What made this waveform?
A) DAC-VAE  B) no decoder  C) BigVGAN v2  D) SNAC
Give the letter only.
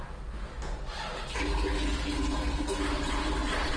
B